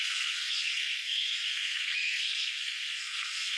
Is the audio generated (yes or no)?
yes